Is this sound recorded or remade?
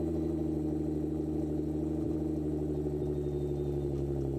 recorded